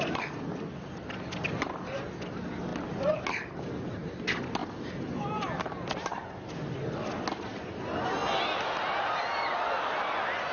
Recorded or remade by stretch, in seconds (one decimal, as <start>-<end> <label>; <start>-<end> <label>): 0.0-10.5 recorded

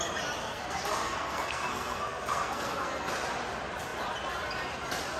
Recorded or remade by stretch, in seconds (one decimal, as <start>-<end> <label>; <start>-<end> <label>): 0.0-0.4 recorded; 0.4-3.1 remade; 3.1-5.2 recorded

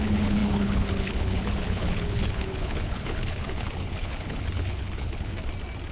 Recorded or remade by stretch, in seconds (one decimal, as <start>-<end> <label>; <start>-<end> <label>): 0.0-5.3 remade; 5.3-5.9 recorded

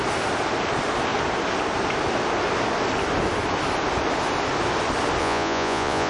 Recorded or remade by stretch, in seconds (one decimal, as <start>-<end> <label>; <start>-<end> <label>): 0.0-5.2 recorded; 5.2-6.1 remade

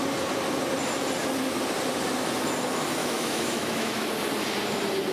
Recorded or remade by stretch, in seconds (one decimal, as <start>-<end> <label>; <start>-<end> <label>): 0.0-3.0 recorded; 3.0-4.1 remade; 4.1-5.1 recorded

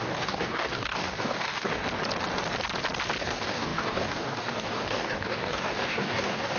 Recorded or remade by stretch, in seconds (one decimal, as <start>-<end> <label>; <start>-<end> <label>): 0.0-1.8 remade; 1.8-3.2 recorded; 3.2-6.6 remade

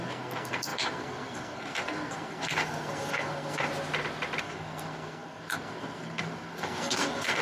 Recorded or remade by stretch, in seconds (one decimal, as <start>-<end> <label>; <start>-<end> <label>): 0.0-3.7 remade; 3.7-4.4 recorded; 4.4-7.4 remade